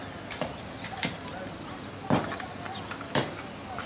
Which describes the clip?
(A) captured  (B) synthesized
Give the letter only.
B